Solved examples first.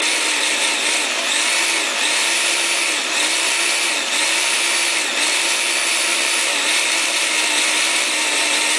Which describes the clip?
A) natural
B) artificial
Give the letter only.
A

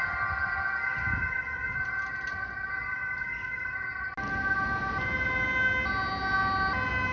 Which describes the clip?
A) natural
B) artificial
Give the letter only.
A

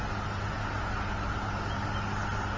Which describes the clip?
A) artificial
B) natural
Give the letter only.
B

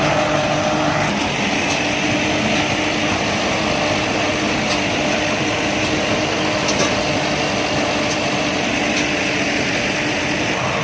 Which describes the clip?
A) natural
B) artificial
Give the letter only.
A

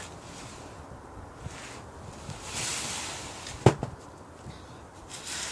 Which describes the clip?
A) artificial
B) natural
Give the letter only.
B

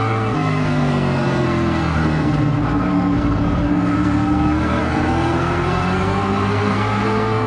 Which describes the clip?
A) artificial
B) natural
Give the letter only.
A